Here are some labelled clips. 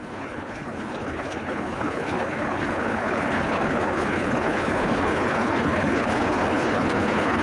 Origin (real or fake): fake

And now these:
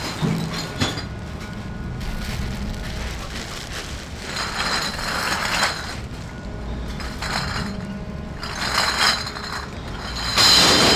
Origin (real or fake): real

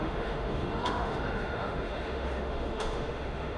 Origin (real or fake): fake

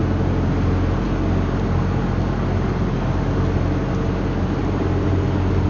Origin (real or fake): real